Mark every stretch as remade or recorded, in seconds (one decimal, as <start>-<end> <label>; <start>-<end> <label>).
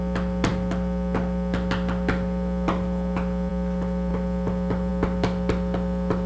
0.0-6.3 recorded